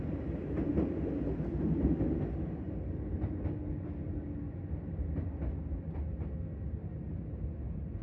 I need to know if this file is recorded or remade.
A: recorded